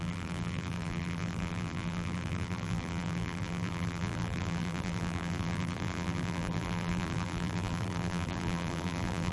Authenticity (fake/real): fake